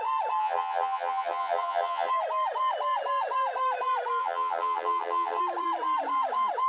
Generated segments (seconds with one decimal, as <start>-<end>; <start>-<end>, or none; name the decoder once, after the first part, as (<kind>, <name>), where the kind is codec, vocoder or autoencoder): 0.4-2.1 (vocoder, HiFi-GAN); 4.2-5.4